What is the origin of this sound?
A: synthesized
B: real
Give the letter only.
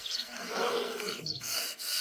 A